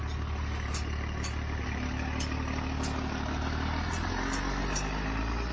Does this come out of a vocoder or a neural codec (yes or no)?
no